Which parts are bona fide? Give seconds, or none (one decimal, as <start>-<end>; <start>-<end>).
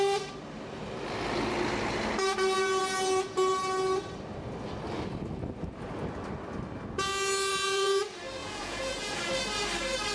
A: 0.0-7.5; 8.0-8.4; 9.2-10.1